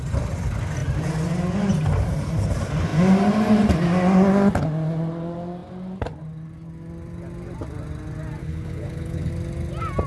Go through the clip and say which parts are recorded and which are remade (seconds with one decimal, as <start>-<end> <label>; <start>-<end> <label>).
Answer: 0.0-8.4 recorded; 8.4-9.3 remade; 9.3-10.1 recorded